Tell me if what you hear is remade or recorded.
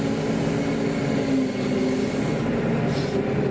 recorded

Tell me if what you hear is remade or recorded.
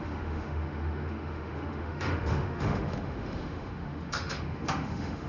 remade